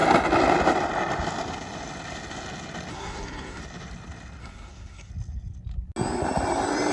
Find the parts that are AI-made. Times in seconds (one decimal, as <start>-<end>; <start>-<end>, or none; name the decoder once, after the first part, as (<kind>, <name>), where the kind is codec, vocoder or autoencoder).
2.9-3.6 (codec, SNAC); 4.4-5.1